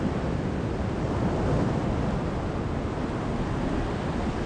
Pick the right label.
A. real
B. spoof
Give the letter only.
A